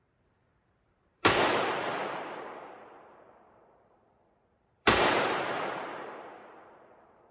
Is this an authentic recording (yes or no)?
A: no